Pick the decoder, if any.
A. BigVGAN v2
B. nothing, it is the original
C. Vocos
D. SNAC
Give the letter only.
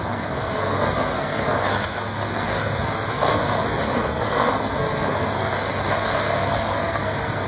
D